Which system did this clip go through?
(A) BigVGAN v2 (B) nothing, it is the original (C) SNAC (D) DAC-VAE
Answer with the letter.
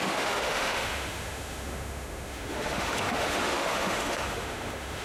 D